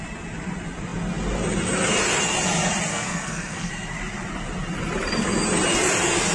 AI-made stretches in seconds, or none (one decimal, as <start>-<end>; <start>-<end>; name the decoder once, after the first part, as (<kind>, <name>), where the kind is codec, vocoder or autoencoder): 2.9-3.7 (codec, SNAC)